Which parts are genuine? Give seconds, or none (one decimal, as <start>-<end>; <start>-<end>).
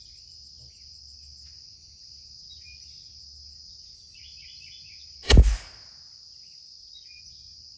0.0-7.8